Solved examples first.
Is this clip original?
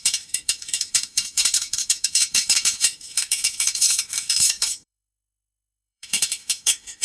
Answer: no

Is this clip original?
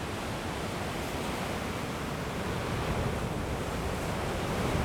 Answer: yes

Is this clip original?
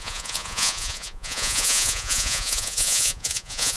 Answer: no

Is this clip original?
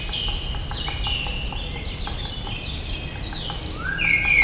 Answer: yes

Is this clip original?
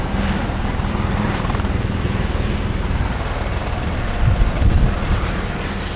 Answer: no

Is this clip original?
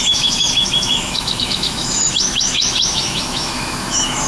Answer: no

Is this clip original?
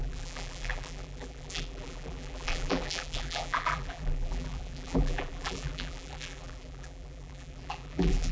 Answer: no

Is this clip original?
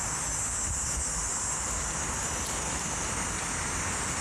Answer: yes